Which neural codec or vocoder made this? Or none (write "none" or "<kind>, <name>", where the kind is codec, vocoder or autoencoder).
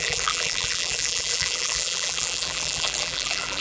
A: vocoder, BigVGAN v2